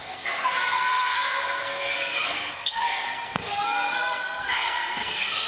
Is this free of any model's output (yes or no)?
no